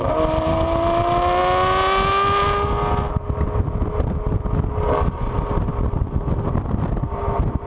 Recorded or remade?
recorded